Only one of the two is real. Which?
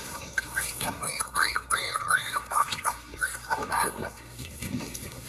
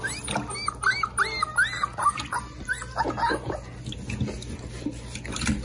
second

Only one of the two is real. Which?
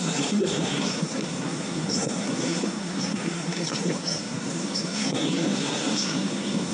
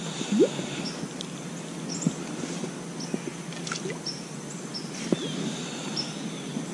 second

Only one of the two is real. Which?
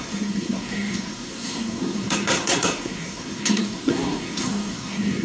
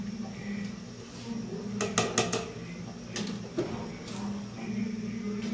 second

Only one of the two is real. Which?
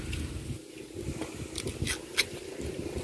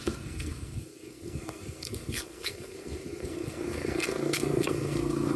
first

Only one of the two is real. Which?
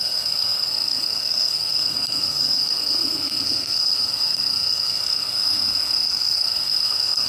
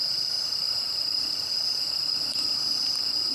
second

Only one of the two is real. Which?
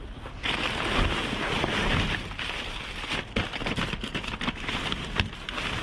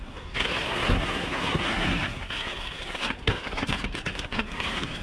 first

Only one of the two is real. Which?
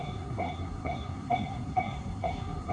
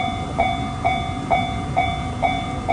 second